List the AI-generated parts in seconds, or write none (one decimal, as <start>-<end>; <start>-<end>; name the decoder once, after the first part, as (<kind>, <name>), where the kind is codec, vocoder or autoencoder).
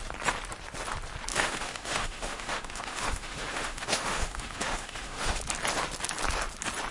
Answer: 1.3-5.4 (autoencoder, DAC-VAE)